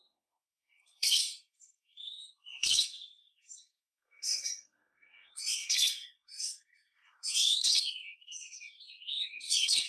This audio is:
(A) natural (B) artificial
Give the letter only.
B